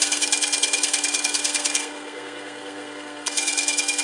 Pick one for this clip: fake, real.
fake